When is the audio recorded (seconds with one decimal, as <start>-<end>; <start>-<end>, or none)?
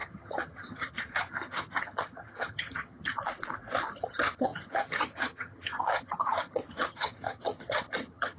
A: 3.1-3.9